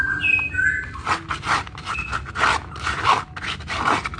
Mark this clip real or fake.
real